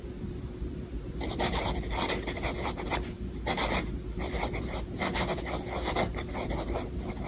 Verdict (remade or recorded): recorded